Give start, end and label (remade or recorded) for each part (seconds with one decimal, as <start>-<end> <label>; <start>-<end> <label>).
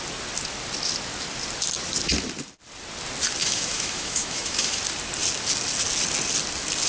0.0-3.4 recorded; 3.4-4.8 remade; 4.8-6.9 recorded